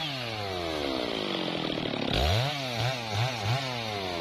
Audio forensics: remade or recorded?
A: recorded